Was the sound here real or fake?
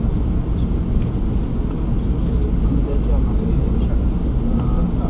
real